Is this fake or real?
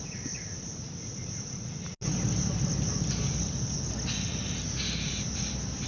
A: real